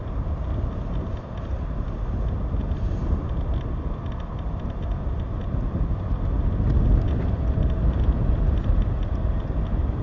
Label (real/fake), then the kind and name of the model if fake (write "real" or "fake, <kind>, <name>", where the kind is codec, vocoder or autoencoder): real